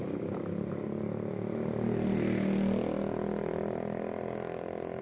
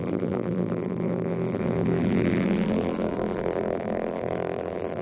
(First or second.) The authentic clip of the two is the first